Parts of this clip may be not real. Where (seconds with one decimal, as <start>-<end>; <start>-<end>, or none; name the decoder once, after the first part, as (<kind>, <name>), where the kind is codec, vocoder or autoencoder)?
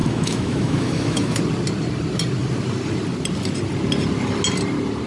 0.0-1.4 (autoencoder, DAC-VAE)